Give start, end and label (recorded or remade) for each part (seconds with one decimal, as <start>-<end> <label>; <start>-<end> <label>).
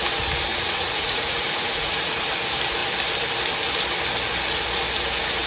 0.0-0.5 recorded; 0.5-2.3 remade; 2.3-5.5 recorded